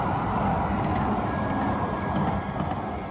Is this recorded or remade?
recorded